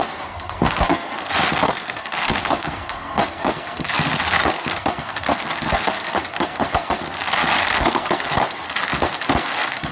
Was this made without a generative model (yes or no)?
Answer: no